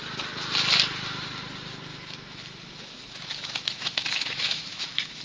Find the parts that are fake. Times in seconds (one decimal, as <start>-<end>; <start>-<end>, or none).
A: 1.9-5.2